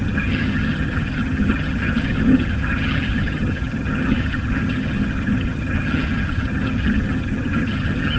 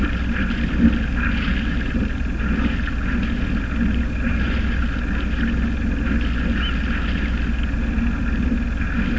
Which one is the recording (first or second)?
second